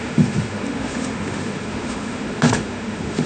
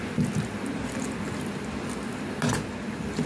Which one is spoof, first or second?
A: first